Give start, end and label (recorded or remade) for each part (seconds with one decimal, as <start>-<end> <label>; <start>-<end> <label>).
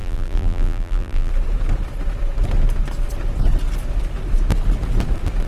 0.0-1.3 remade; 1.3-5.5 recorded